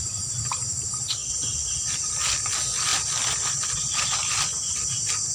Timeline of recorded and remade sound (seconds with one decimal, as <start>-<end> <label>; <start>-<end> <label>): 0.0-5.3 recorded